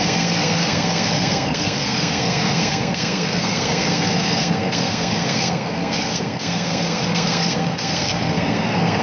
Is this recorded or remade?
remade